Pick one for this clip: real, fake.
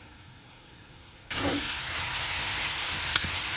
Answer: fake